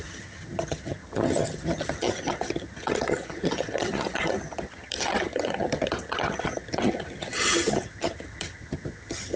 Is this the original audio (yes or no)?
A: no